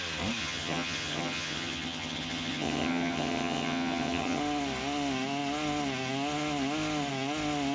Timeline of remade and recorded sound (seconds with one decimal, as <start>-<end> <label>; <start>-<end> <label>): 0.0-0.4 recorded; 0.4-4.4 remade; 4.4-7.7 recorded